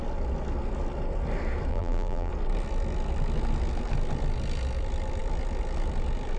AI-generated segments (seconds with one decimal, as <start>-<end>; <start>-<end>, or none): 1.7-2.3